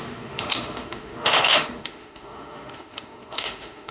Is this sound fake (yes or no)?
yes